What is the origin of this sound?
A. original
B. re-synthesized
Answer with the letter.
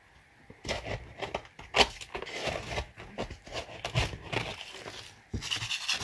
A